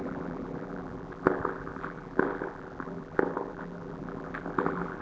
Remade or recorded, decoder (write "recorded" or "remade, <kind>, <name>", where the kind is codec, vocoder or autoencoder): remade, vocoder, BigVGAN v2